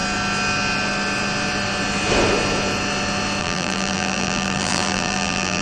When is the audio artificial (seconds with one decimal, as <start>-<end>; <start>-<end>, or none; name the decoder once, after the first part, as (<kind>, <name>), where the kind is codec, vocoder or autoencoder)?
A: 3.4-5.6 (vocoder, BigVGAN v2)

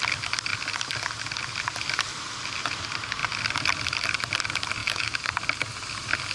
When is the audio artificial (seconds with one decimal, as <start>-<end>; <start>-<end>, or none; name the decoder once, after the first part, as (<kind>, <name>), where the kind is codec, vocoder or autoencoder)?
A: 4.8-5.3 (autoencoder, DAC-VAE)

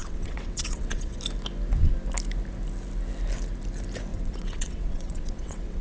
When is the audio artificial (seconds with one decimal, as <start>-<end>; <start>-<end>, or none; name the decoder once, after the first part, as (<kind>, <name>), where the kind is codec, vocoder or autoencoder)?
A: 0.0-1.2 (vocoder, WaveNeXt); 4.1-5.8

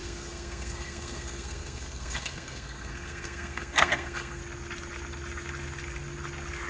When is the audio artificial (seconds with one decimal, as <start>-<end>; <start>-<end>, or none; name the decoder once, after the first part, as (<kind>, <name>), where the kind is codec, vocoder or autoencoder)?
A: 0.0-4.4 (codec, SNAC)